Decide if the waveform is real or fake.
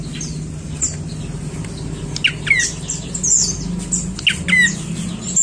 real